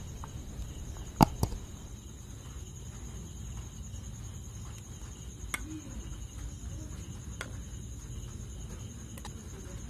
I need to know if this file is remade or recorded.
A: recorded